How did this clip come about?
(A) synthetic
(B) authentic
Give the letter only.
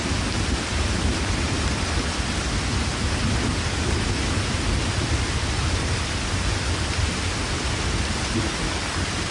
A